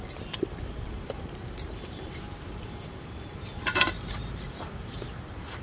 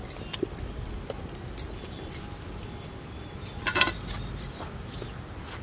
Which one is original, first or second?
second